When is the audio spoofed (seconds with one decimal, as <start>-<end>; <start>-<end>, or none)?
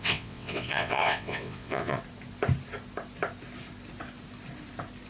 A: 0.0-2.0